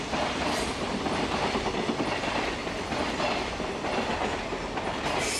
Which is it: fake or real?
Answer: real